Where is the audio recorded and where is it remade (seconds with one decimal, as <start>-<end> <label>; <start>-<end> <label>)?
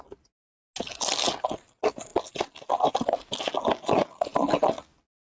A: 0.0-5.2 recorded